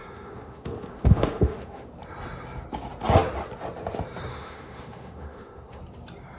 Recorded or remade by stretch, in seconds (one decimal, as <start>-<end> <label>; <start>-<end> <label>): 0.0-1.9 remade; 1.9-4.3 recorded; 4.3-5.8 remade; 5.8-6.4 recorded